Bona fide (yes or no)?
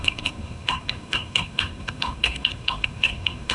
no